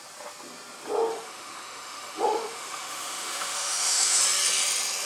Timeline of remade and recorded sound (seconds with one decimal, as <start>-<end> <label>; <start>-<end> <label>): 0.0-1.1 recorded; 1.1-4.2 remade; 4.2-5.1 recorded